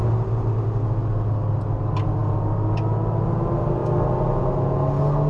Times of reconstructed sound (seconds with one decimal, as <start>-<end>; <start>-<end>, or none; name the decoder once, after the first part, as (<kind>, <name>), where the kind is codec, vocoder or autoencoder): none